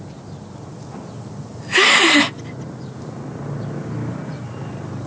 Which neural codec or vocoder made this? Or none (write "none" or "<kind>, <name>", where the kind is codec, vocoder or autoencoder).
none